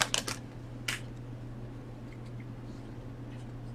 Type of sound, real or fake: real